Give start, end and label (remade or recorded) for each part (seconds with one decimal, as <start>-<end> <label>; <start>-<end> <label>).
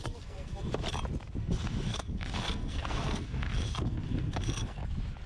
0.0-0.7 remade; 0.7-1.4 recorded; 1.4-4.8 remade; 4.8-5.3 recorded